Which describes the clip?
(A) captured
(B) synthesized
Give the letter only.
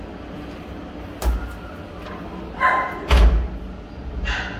A